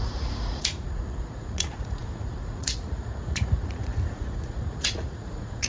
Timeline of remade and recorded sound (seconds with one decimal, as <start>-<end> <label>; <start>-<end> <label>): 0.0-5.7 remade